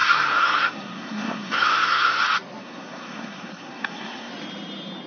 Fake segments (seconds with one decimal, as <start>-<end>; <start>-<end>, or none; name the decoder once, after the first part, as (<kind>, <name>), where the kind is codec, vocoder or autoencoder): 0.0-2.2 (codec, SNAC); 2.6-4.3